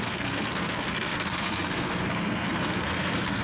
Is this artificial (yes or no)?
yes